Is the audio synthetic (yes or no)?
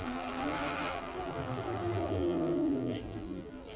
yes